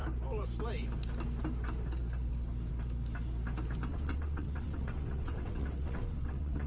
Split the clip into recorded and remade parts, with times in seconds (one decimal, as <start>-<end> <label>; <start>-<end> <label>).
0.0-3.9 recorded; 3.9-6.7 remade